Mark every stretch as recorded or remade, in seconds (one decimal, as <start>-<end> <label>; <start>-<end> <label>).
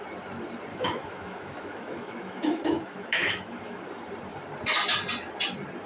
0.0-0.7 recorded; 0.7-3.8 remade; 3.8-5.9 recorded